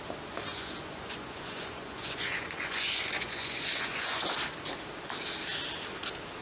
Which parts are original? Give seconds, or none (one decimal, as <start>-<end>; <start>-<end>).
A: 0.0-0.5; 4.3-6.4